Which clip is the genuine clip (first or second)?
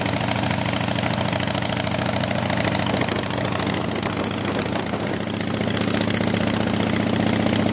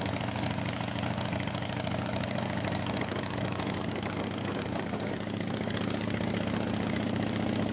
first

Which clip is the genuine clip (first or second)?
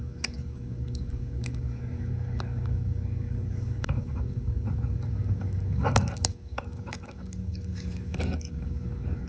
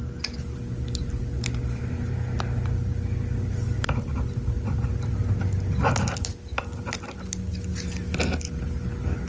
second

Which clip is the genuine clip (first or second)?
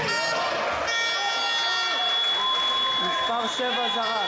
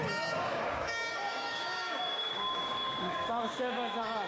first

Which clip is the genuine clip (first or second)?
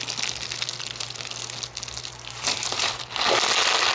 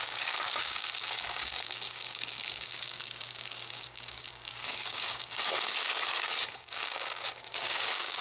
first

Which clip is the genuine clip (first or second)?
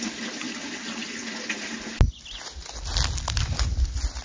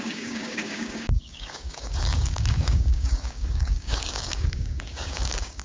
first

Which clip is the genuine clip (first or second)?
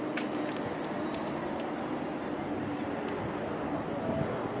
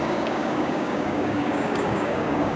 first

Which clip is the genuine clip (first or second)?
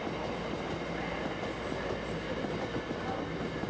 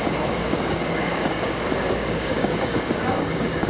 first